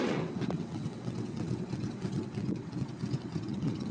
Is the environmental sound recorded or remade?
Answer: remade